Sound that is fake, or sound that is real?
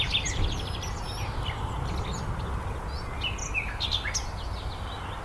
real